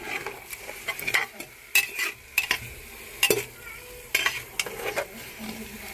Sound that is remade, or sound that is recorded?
recorded